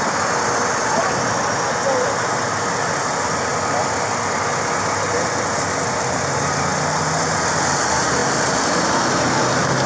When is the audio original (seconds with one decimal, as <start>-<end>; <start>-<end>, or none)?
0.0-9.9